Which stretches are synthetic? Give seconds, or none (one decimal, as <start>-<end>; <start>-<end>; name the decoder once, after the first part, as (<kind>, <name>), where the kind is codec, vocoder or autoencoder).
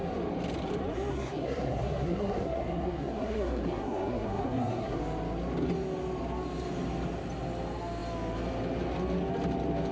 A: 1.1-5.0 (codec, SNAC)